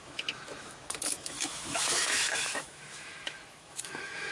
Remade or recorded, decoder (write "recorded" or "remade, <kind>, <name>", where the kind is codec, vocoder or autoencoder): remade, autoencoder, DAC-VAE